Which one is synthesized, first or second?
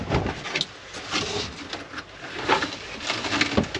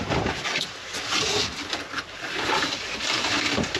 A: second